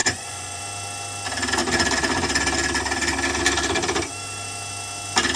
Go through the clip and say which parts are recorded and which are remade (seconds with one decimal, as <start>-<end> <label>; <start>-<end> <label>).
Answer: 0.0-0.6 remade; 0.6-5.4 recorded